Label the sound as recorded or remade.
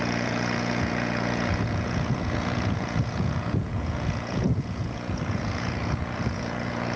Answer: remade